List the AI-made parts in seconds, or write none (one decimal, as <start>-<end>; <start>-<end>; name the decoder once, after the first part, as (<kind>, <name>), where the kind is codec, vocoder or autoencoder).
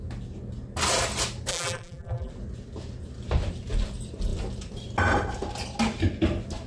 1.5-2.3 (vocoder, BigVGAN v2)